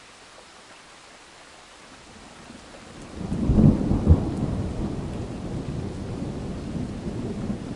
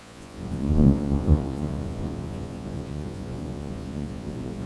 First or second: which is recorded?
first